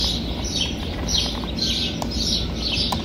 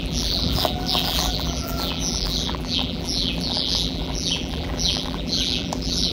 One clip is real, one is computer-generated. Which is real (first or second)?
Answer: first